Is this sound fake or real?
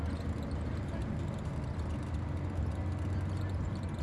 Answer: real